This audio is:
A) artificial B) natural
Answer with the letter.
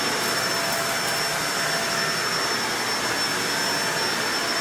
B